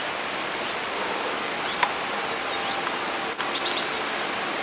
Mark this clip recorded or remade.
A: recorded